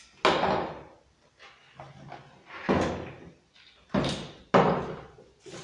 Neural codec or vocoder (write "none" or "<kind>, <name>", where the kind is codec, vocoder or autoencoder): none